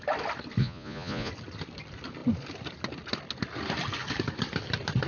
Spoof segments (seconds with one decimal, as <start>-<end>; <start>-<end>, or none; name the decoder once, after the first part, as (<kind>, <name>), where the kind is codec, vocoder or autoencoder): 0.6-1.3 (vocoder, Vocos)